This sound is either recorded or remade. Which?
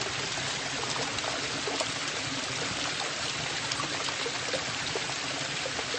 recorded